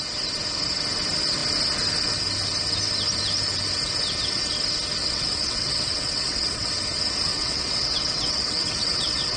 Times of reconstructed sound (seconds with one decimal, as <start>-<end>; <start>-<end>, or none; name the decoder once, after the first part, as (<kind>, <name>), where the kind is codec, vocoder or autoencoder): 5.0-6.7 (vocoder, WaveNeXt); 7.3-9.4